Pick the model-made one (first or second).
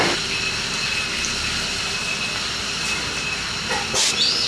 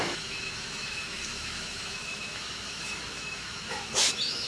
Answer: second